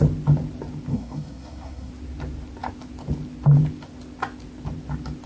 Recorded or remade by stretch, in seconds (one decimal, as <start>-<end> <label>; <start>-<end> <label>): 0.0-0.9 recorded; 0.9-1.9 remade; 1.9-5.3 recorded